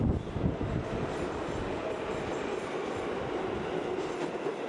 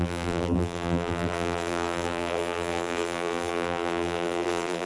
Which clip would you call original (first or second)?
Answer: first